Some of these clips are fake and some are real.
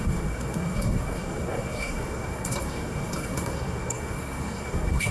fake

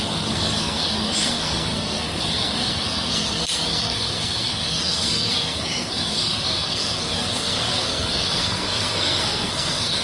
fake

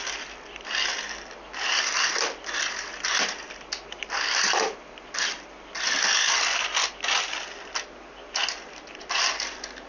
real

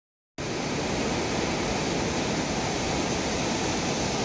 real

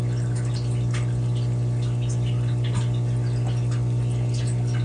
real